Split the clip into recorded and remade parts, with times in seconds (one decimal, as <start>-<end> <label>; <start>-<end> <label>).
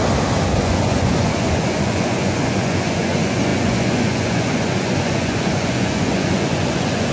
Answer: 0.0-0.6 recorded; 0.6-7.1 remade